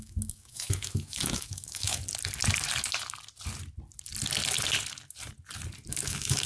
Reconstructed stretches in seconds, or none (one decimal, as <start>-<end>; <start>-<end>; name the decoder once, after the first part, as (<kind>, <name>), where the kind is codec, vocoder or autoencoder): 0.0-2.0 (autoencoder, DAC-VAE); 5.9-6.5